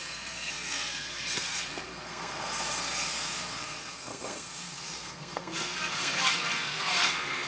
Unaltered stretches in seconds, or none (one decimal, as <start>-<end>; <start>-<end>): none